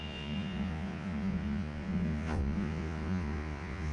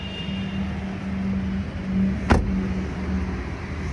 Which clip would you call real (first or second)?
second